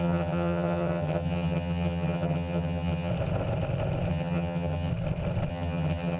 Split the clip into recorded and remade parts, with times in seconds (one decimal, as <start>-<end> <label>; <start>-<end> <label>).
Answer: 0.0-3.1 remade; 3.1-4.1 recorded; 4.1-4.9 remade; 4.9-5.5 recorded; 5.5-6.2 remade